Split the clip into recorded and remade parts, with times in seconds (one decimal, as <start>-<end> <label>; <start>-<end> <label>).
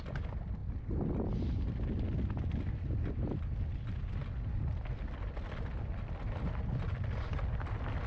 0.0-8.1 recorded